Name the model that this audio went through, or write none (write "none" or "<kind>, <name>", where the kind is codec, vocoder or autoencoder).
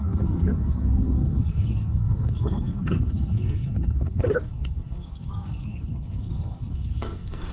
codec, SNAC